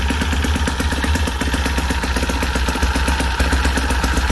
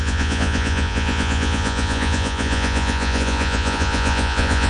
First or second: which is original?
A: first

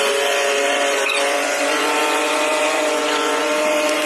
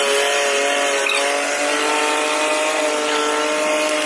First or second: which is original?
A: second